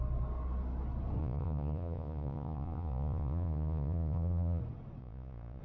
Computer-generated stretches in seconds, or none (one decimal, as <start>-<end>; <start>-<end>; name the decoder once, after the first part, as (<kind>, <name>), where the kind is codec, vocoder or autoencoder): 1.2-4.6 (vocoder, Vocos); 5.0-5.6